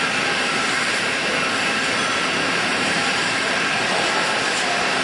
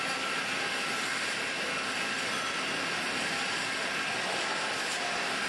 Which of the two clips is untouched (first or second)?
second